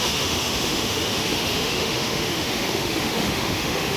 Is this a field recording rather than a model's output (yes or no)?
no